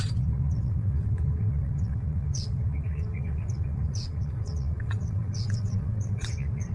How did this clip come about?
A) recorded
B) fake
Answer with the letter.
B